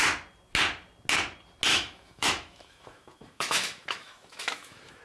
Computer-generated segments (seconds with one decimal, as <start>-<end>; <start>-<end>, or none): 1.7-5.0